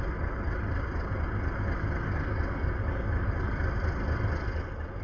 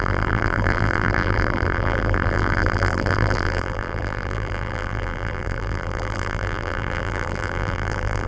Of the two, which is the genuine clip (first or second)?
first